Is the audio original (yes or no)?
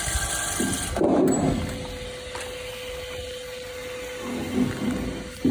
yes